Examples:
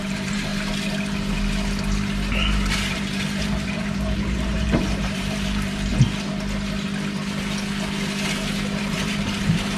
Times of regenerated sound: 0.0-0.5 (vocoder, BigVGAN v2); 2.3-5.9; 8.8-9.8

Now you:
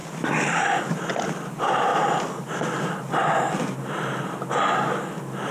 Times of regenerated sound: none

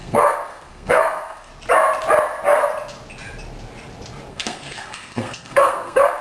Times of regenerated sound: 0.0-1.5 (codec, SNAC); 4.3-6.2

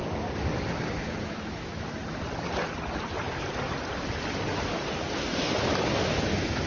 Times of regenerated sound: 1.0-2.0 (autoencoder, DAC-VAE); 6.0-6.7

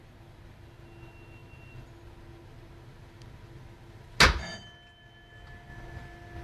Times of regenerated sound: none